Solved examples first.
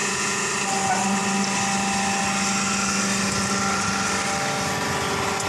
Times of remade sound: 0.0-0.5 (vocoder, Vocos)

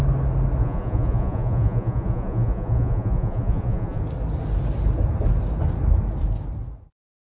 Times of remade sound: 0.6-4.0 (vocoder, Vocos)

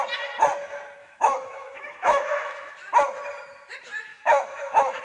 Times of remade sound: 1.0-2.7 (autoencoder, DAC-VAE); 4.1-5.0

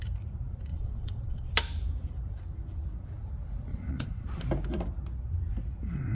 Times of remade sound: 0.7-1.5 (vocoder, Vocos); 3.7-4.4

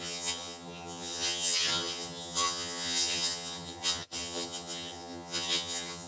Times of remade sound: 0.0-6.1 (vocoder, HiFi-GAN)

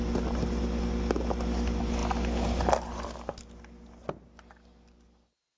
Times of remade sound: none